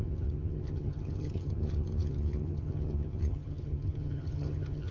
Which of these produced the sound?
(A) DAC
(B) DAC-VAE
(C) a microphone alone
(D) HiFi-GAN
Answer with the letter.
D